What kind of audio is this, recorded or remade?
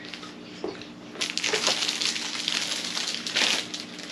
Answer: recorded